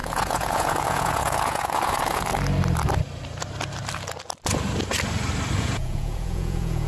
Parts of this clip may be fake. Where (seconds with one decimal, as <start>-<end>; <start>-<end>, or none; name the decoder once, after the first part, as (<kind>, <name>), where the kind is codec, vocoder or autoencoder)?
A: 0.0-2.3 (vocoder, Vocos); 5.6-6.9